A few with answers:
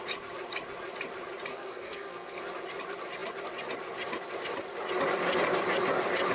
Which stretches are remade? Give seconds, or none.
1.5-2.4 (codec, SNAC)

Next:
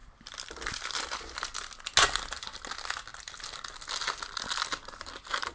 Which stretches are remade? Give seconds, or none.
0.0-0.7 (vocoder, BigVGAN v2); 3.1-5.5